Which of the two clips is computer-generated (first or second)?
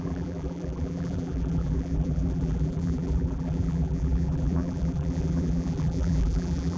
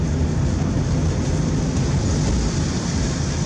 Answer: first